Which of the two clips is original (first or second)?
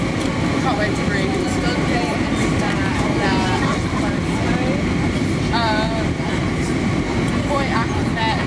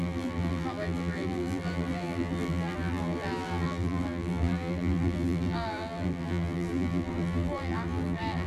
first